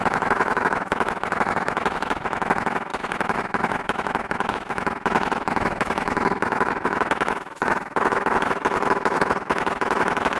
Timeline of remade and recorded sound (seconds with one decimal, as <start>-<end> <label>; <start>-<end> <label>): 0.0-10.4 remade